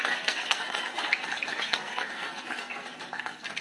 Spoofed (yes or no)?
yes